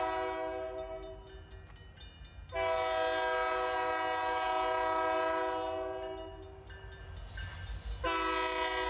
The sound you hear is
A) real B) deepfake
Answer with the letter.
A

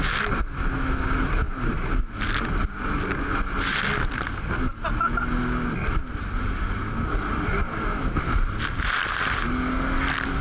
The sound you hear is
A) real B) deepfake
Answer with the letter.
A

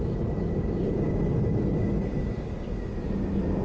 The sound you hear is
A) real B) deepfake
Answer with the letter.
A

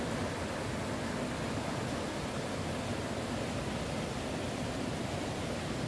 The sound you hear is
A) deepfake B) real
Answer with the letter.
B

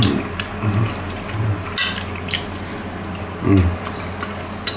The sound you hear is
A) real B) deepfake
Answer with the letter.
A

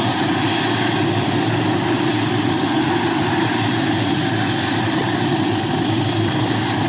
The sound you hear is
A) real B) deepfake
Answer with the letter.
A